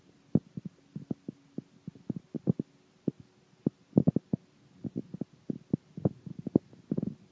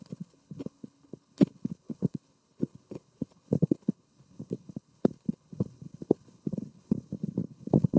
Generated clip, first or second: second